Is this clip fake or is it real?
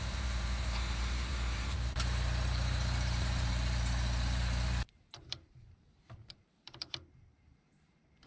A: fake